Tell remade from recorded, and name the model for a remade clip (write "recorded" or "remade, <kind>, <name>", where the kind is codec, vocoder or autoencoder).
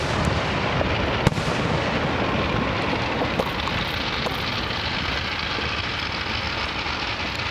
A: recorded